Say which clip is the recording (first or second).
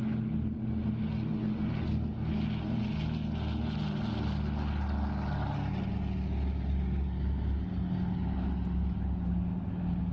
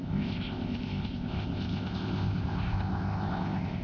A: first